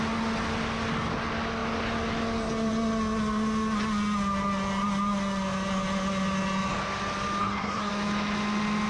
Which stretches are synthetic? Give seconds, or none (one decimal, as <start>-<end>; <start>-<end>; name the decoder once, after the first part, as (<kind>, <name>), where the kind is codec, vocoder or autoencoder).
7.4-7.9 (codec, SNAC)